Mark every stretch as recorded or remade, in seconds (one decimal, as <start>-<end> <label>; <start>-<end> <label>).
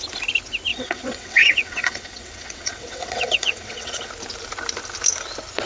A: 0.0-0.7 recorded; 0.7-4.1 remade; 4.1-5.7 recorded